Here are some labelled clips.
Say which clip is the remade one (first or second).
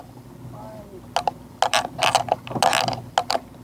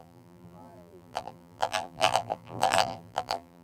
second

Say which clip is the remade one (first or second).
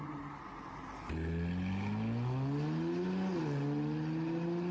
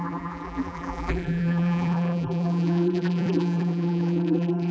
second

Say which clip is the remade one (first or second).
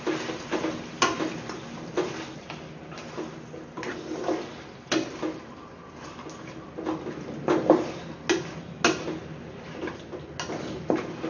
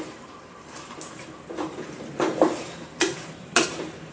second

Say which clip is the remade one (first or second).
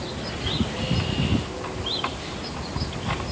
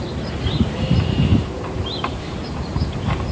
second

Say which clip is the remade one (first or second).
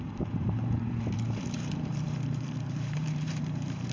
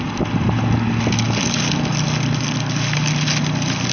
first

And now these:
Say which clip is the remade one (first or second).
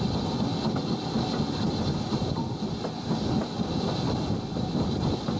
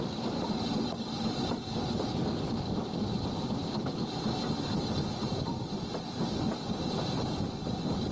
second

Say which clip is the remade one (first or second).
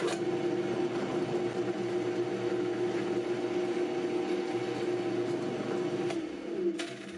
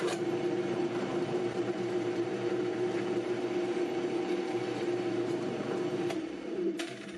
second